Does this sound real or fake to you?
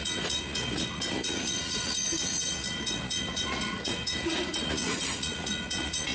fake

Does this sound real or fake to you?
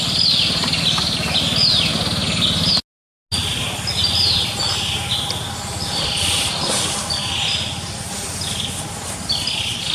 real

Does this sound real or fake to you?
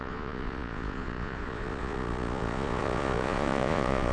fake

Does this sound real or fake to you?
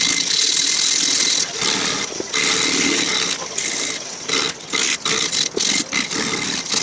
real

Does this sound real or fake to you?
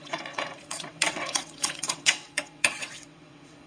fake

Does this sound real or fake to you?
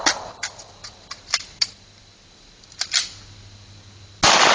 real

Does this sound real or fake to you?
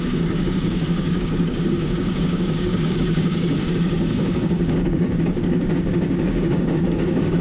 fake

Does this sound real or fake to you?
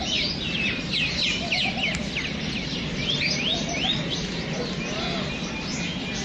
real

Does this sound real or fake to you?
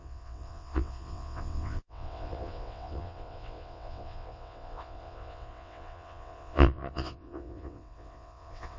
fake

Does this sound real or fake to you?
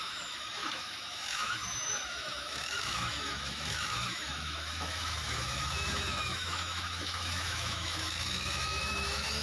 fake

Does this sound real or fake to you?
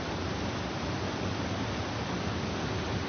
real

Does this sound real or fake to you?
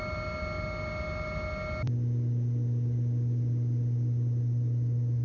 real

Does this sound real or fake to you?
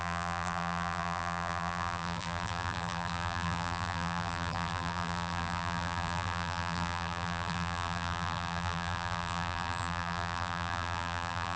fake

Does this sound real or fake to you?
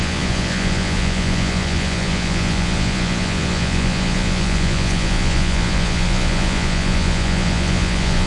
fake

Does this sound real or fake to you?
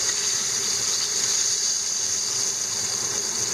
real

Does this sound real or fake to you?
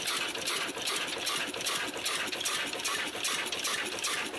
real